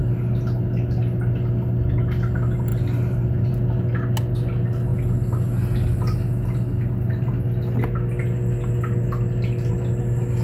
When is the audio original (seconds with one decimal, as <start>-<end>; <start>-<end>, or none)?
0.0-10.4